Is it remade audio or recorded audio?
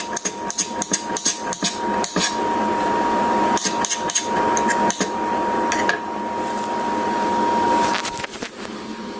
recorded